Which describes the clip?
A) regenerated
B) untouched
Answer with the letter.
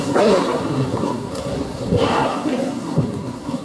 A